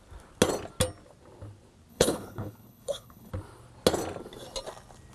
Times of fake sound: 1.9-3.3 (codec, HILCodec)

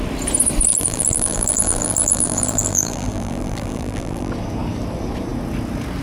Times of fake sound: 0.7-4.3 (vocoder, BigVGAN v2)

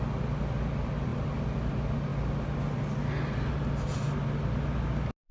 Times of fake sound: 1.1-1.7 (vocoder, BigVGAN v2)

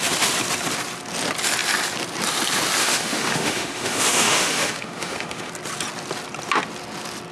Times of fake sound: 2.8-5.5 (autoencoder, DAC-VAE)